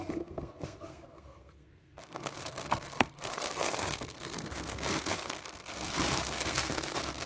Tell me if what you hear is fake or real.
fake